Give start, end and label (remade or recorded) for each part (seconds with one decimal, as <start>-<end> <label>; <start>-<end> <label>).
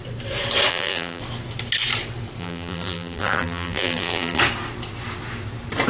0.0-0.7 recorded; 0.7-1.2 remade; 1.2-2.4 recorded; 2.4-4.4 remade; 4.4-5.9 recorded